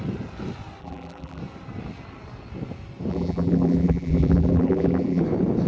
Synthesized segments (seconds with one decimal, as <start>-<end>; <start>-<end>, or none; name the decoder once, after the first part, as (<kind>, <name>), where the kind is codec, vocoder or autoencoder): 0.8-1.4 (vocoder, BigVGAN v2); 3.1-5.2